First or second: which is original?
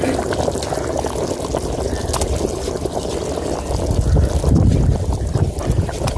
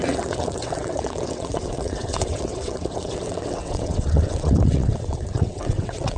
first